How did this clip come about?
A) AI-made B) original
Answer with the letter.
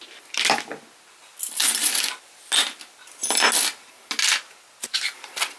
B